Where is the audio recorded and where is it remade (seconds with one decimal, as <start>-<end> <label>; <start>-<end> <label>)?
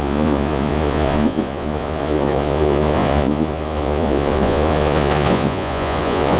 0.0-6.4 remade